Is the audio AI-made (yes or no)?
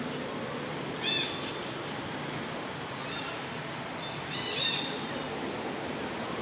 no